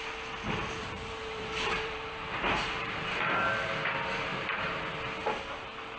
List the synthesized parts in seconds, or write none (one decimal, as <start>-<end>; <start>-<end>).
0.8-3.7; 4.3-4.8